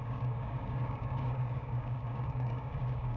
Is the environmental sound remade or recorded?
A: remade